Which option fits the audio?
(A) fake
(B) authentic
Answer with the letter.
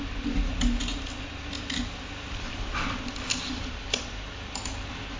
B